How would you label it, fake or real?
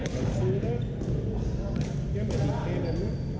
real